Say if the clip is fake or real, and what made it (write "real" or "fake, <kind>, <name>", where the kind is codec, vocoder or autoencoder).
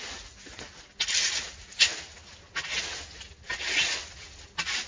real